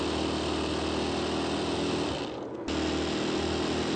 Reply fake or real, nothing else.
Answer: real